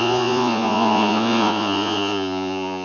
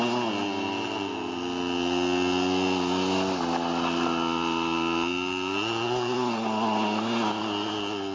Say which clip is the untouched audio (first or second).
second